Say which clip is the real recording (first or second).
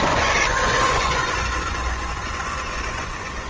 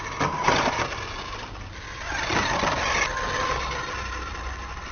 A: second